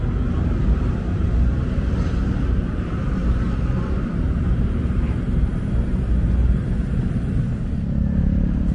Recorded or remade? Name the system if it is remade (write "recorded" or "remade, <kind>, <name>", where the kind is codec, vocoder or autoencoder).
remade, vocoder, BigVGAN v2